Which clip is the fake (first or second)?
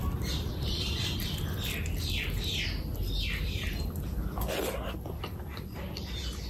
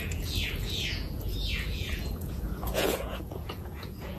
second